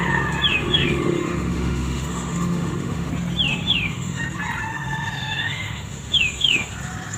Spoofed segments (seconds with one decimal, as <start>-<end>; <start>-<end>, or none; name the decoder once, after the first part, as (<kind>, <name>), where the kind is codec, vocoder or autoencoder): 0.5-3.1 (autoencoder, DAC-VAE); 3.5-4.2; 4.7-6.7